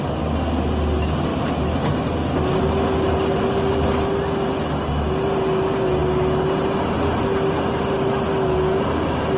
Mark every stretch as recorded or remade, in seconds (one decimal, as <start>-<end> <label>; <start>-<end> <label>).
0.0-9.4 recorded